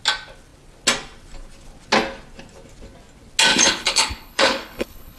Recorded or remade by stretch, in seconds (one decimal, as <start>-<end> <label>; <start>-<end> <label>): 0.0-3.5 recorded; 3.5-5.2 remade